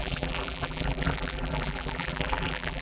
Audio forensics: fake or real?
fake